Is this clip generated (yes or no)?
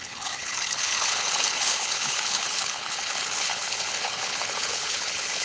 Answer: yes